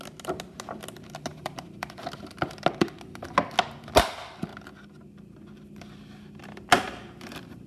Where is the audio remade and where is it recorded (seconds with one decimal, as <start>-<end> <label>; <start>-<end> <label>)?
0.0-1.3 recorded; 1.3-2.0 remade; 2.0-6.4 recorded; 6.4-7.7 remade